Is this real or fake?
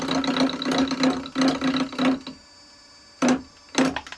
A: real